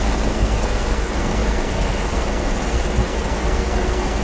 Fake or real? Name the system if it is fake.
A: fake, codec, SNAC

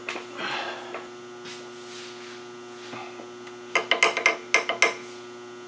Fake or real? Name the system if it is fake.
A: real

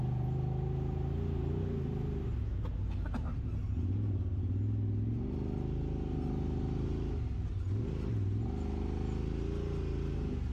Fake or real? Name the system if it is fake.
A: real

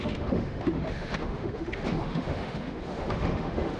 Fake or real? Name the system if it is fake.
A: fake, autoencoder, DAC-VAE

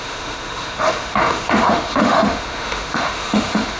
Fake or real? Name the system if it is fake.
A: fake, autoencoder, DAC-VAE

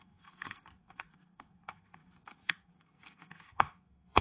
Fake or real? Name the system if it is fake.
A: fake, codec, SNAC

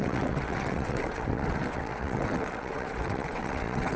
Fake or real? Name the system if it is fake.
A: fake, vocoder, WaveNeXt